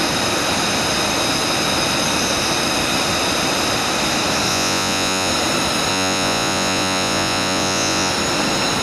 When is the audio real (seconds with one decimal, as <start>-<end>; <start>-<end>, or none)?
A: 0.0-4.5; 5.3-5.9; 8.1-8.8